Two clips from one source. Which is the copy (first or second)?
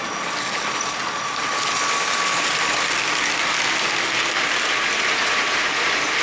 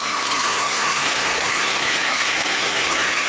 second